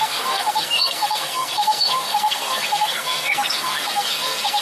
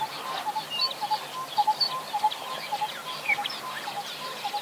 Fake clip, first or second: first